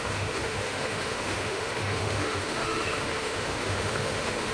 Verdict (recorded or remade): remade